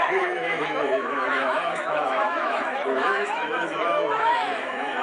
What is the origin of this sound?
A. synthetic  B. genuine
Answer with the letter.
A